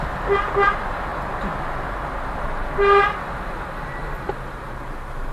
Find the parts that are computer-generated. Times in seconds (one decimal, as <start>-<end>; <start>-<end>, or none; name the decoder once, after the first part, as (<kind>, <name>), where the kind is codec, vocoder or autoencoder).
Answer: none